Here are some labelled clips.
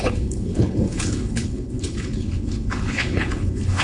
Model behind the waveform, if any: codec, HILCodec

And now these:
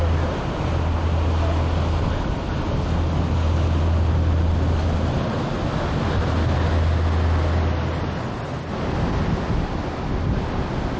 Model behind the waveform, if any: none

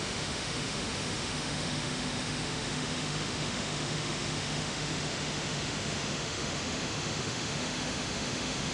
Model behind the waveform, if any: autoencoder, DAC-VAE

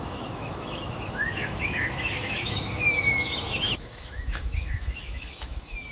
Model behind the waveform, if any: autoencoder, DAC-VAE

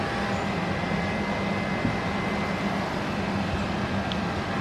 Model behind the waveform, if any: none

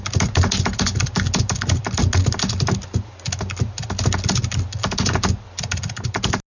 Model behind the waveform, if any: none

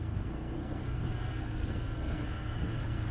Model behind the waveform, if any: codec, SNAC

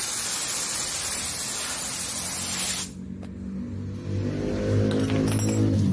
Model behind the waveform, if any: none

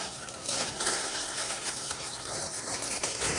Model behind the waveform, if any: codec, SNAC